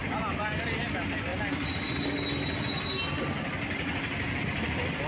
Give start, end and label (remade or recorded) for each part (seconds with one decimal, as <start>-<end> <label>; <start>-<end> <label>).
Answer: 0.0-5.1 recorded